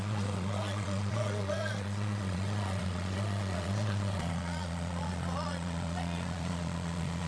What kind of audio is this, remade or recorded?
remade